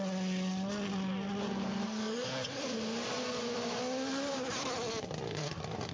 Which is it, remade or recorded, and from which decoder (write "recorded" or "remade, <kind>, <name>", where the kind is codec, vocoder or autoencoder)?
recorded